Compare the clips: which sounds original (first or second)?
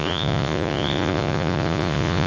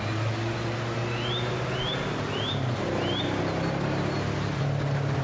second